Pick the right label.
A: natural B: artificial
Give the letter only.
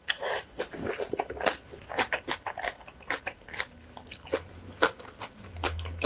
A